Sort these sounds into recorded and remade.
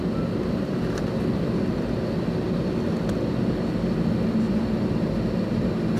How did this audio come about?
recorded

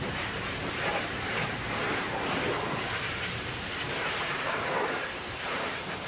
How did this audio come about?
remade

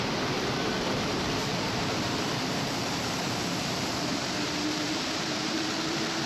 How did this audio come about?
remade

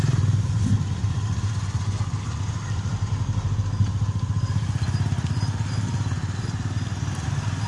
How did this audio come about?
recorded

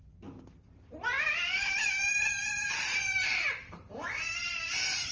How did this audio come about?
remade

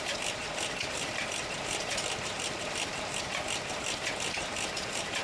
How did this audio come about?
recorded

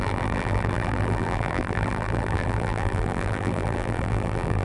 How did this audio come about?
remade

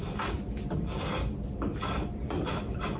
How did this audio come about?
remade